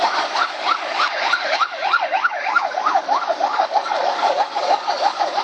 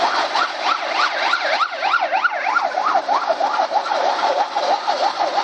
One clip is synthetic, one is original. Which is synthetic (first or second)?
first